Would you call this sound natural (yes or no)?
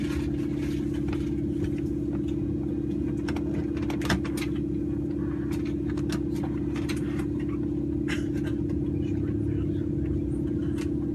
yes